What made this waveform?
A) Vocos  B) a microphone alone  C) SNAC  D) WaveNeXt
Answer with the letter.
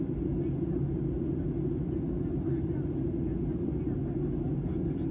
B